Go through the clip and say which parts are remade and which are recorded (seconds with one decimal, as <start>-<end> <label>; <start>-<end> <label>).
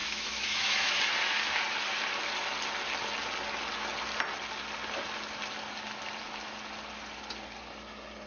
0.0-1.0 remade; 1.0-8.3 recorded